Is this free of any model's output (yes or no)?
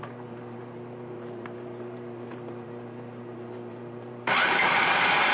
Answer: no